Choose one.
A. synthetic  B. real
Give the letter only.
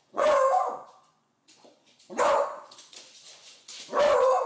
A